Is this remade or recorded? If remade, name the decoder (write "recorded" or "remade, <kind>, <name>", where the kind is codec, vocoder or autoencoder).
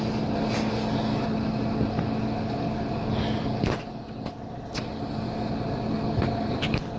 recorded